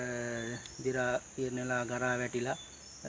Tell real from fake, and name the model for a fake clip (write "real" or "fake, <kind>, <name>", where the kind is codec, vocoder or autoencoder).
real